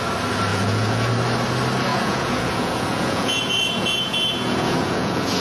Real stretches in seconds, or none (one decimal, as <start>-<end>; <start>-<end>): 0.0-0.5; 1.1-1.9